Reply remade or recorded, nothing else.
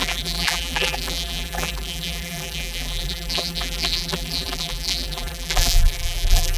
remade